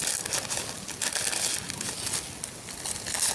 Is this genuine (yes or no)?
yes